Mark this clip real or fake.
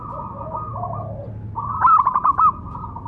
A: real